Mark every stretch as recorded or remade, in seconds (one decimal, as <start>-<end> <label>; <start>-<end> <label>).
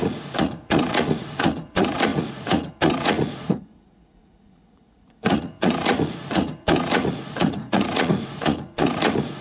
0.0-9.4 remade